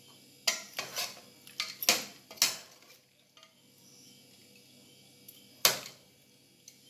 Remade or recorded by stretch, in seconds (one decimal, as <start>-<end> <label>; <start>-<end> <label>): 0.0-6.9 recorded

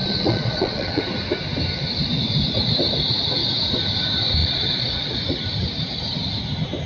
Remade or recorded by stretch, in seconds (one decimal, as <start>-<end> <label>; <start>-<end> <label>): 0.0-1.0 remade; 1.0-4.4 recorded; 4.4-5.2 remade; 5.2-6.9 recorded

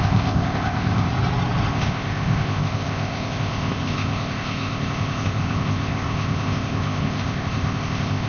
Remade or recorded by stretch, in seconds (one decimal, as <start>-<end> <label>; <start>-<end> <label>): 0.0-1.1 remade; 1.1-1.7 recorded; 1.7-8.3 remade

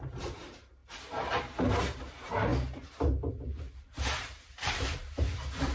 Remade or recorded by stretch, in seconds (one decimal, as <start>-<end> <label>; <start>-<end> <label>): 0.0-0.8 remade; 0.8-2.0 recorded; 2.0-2.5 remade; 2.5-3.3 recorded; 3.3-5.7 remade

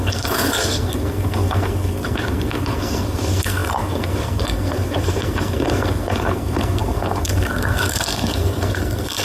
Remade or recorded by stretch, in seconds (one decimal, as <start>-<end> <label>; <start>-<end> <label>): 0.0-9.2 remade

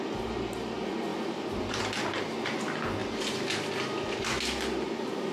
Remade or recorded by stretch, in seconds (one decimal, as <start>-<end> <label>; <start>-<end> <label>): 0.0-1.1 recorded; 1.1-1.8 remade; 1.8-5.3 recorded